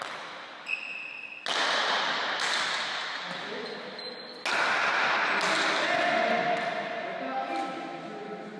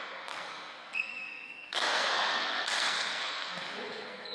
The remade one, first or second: second